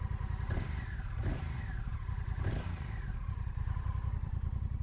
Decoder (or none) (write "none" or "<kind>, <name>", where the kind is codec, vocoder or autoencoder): vocoder, BigVGAN v2